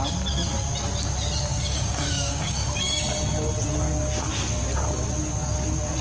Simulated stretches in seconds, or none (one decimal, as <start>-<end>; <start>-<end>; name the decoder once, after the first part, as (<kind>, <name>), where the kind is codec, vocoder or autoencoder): 1.5-3.0 (codec, DAC)